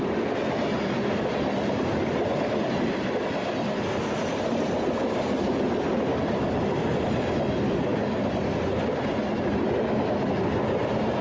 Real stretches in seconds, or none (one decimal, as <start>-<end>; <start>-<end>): 0.0-11.2